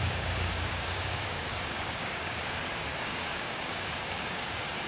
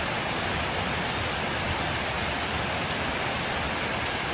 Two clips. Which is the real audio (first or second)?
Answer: second